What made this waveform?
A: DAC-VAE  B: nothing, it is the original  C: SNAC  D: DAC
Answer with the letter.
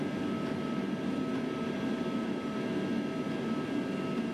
B